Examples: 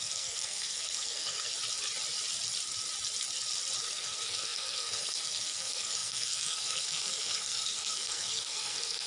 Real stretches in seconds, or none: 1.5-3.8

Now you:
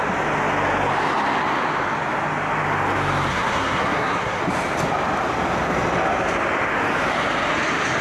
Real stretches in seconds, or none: 0.0-3.3; 4.4-8.0